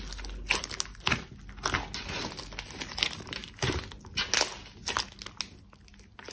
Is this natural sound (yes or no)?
yes